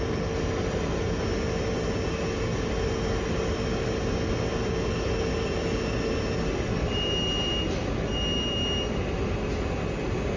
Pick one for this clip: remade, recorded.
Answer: recorded